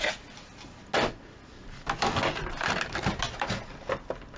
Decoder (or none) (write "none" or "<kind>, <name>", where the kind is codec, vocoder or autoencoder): none